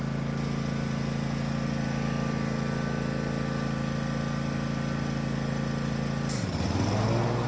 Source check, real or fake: real